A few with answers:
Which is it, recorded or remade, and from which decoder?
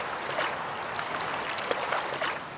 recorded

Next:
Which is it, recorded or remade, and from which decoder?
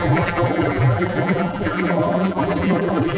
remade, vocoder, BigVGAN v2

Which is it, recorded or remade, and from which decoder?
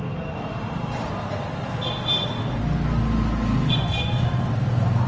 recorded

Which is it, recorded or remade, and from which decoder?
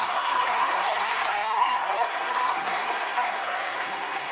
remade, codec, SNAC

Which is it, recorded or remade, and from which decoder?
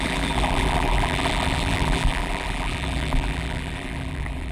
remade, vocoder, BigVGAN v2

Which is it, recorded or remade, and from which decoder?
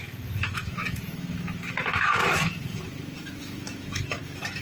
remade, autoencoder, DAC-VAE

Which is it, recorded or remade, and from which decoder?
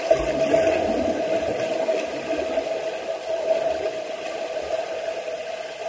recorded